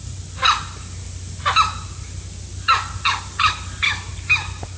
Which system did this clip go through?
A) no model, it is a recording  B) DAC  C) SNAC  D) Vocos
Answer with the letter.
A